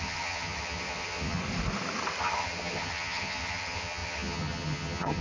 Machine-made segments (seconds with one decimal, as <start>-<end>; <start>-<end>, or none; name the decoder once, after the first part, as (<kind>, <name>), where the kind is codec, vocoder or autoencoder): 0.0-1.4 (vocoder, HiFi-GAN); 2.2-5.2